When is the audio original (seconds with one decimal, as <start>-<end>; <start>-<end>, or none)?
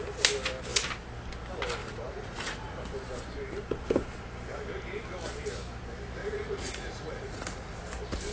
0.0-1.8; 2.8-6.2; 7.8-8.3